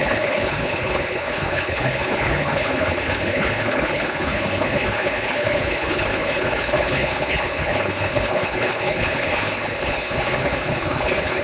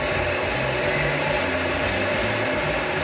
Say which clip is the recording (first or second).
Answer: second